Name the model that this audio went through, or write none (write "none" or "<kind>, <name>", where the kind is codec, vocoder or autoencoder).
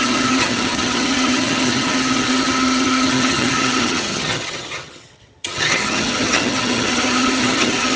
vocoder, HiFi-GAN